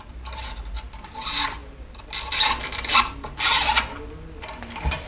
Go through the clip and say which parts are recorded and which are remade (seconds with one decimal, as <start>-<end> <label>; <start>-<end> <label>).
0.0-5.1 recorded